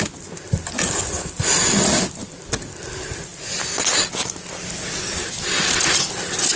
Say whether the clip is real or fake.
real